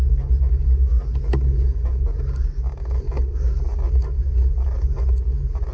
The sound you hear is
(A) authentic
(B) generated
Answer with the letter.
A